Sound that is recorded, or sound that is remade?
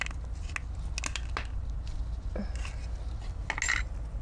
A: recorded